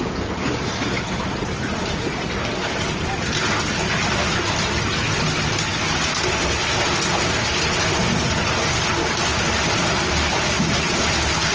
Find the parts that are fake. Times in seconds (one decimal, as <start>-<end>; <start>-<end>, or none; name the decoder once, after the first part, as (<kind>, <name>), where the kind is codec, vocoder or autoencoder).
9.3-11.1 (vocoder, BigVGAN v2)